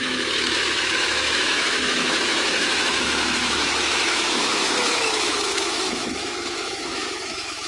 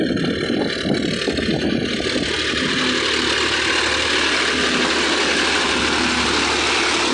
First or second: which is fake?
first